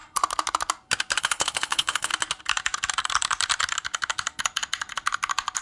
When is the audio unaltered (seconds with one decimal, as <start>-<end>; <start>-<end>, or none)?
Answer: 0.0-1.2; 2.1-5.6